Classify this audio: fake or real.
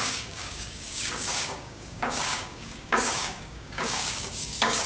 fake